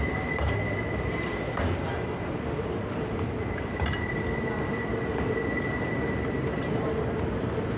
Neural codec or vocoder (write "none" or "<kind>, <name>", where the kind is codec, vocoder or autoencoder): none